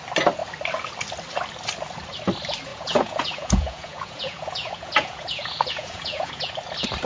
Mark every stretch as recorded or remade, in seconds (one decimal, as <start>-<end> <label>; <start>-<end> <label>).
0.0-2.7 recorded; 2.7-6.5 remade; 6.5-7.1 recorded

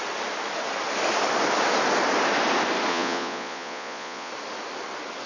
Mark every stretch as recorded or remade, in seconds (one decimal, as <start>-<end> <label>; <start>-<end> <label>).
0.0-2.9 recorded; 2.9-4.3 remade; 4.3-5.3 recorded